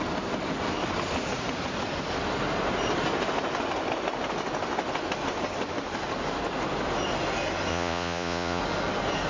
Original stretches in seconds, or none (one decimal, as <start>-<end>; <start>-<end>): 0.0-7.7; 8.6-9.3